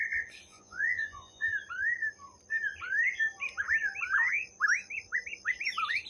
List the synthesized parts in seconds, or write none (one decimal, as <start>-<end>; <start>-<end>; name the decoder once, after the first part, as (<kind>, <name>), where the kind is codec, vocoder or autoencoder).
0.5-1.5 (vocoder, Vocos)

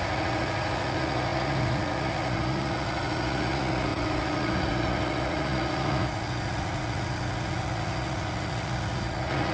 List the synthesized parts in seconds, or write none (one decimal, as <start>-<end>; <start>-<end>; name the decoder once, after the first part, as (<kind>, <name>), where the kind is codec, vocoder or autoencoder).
0.0-9.5 (vocoder, Vocos)

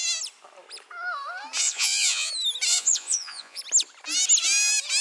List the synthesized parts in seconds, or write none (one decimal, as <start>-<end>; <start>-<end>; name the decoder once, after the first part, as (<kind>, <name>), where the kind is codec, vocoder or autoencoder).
1.6-2.3 (vocoder, Vocos); 2.7-3.6

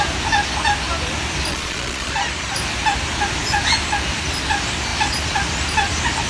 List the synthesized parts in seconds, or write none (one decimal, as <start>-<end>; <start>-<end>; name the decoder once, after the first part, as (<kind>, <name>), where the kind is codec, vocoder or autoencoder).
1.5-2.1 (vocoder, Vocos)